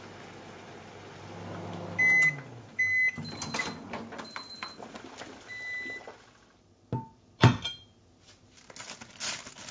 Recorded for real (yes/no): yes